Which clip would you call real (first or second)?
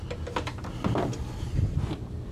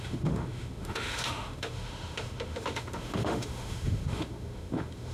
first